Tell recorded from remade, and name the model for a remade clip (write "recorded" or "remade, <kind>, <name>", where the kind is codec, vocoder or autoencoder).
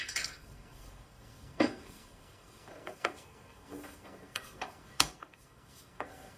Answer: remade, codec, SNAC